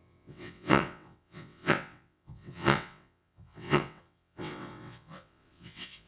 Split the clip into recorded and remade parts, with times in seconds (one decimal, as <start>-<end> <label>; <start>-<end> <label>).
0.0-6.1 remade